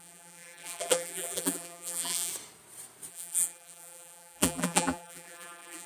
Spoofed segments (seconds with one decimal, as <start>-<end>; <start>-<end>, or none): 0.0-2.3; 3.1-5.9